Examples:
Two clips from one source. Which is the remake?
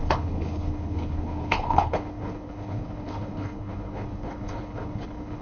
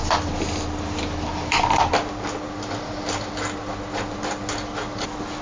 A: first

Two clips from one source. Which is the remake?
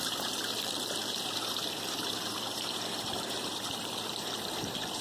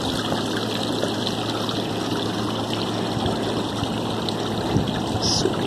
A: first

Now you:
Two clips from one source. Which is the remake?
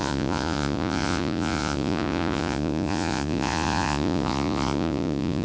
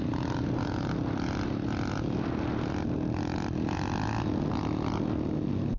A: first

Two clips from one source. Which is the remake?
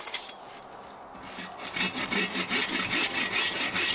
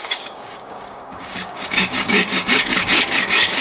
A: second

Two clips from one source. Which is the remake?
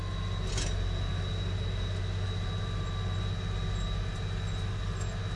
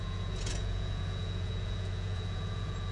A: second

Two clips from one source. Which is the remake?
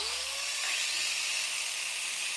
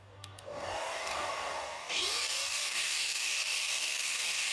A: second